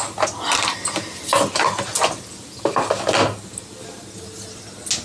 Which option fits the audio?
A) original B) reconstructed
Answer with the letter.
A